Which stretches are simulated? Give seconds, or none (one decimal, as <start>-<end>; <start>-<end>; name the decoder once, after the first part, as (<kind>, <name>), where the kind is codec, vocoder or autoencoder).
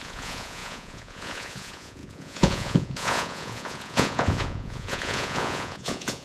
0.0-6.2 (vocoder, Vocos)